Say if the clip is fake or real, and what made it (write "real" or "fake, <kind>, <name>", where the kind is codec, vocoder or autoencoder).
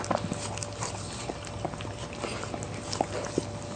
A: real